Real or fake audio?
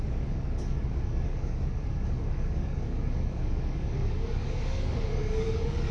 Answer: fake